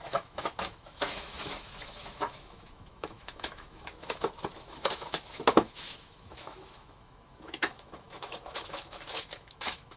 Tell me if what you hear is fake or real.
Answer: fake